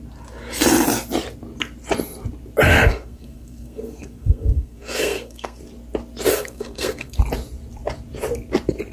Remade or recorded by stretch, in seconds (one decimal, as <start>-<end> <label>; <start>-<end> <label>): 0.0-2.7 recorded; 2.7-5.6 remade; 5.6-6.3 recorded; 6.3-7.2 remade; 7.2-8.9 recorded